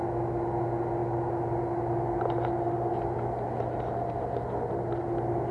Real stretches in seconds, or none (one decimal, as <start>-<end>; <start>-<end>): 0.0-5.5